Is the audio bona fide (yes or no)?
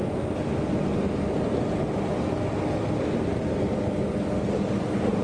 yes